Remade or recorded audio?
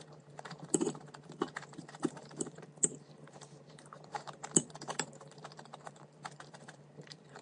remade